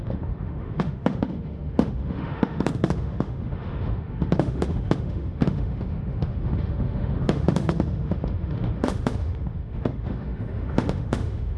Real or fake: fake